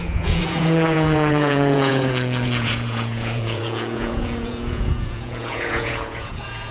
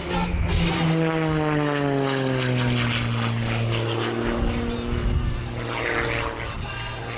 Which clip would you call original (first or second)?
second